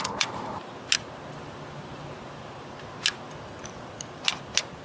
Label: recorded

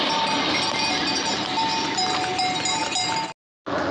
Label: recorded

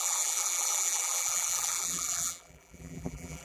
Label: remade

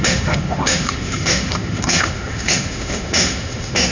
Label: remade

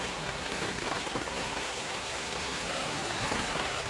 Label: remade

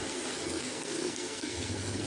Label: remade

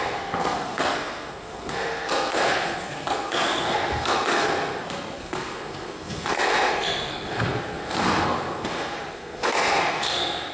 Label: remade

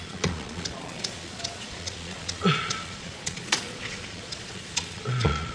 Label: remade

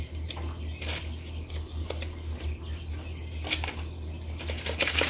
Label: recorded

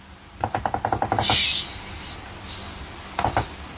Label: recorded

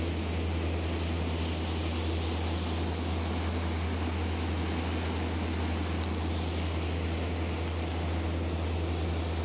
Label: recorded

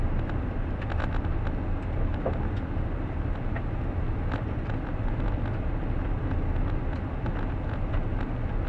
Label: recorded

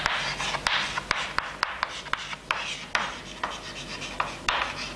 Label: recorded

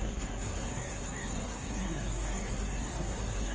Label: remade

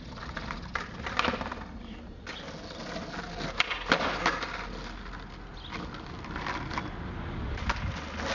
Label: recorded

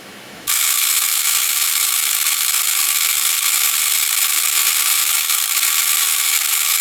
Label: remade